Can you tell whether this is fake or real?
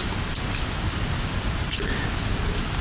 real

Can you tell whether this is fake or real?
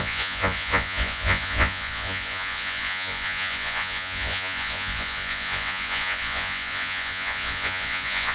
fake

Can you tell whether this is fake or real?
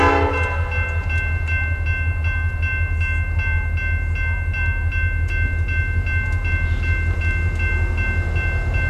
real